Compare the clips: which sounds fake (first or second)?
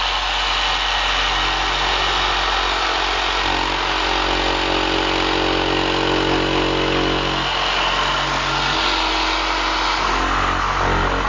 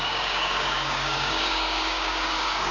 second